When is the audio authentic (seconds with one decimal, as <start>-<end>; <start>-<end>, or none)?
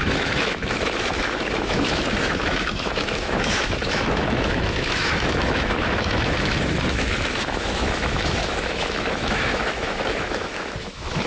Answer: none